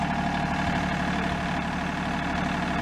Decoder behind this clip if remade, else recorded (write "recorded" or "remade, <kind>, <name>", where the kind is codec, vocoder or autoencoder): recorded